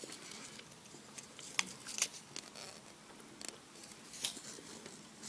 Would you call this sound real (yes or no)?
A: yes